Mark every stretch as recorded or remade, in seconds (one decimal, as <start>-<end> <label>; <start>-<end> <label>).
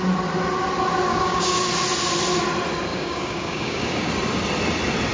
0.0-1.1 recorded; 1.1-1.7 remade; 1.7-2.9 recorded; 2.9-4.1 remade; 4.1-5.1 recorded